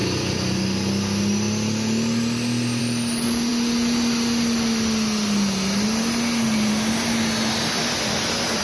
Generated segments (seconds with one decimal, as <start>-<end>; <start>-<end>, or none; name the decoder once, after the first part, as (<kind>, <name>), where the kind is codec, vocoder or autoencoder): none